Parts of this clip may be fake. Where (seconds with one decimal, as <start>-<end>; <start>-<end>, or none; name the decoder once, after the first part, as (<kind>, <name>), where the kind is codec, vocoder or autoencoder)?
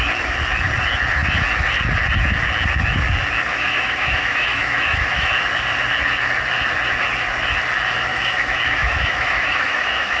3.5-5.3 (autoencoder, DAC-VAE); 8.1-10.2